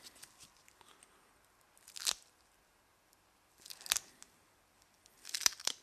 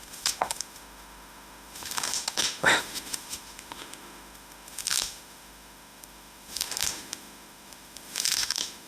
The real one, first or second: first